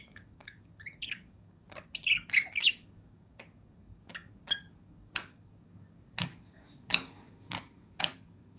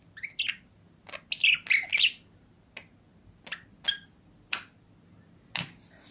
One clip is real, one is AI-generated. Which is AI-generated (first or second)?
first